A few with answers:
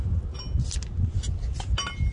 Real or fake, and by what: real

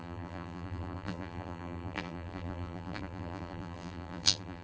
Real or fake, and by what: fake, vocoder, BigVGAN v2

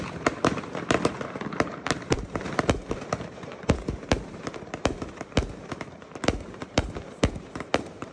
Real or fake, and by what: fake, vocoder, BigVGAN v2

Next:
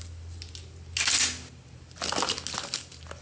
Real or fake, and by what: real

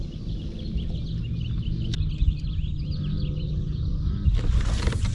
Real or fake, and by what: real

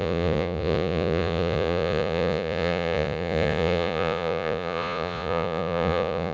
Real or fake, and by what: fake, vocoder, Vocos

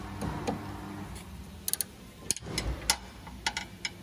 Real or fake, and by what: real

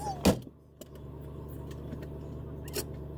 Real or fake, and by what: real